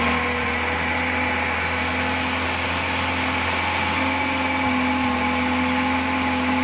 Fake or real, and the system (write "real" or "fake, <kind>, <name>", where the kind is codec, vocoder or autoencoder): real